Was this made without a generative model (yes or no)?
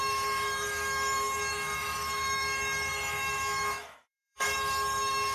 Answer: no